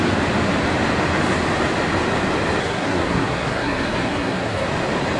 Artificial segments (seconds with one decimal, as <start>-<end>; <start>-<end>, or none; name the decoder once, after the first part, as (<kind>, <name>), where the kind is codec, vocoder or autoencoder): 2.6-4.7 (codec, SNAC)

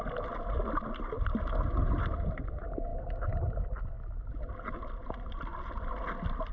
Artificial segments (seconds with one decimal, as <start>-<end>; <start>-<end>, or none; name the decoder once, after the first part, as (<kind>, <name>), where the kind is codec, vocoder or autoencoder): none